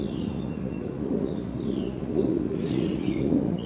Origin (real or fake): fake